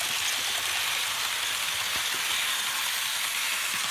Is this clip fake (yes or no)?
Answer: no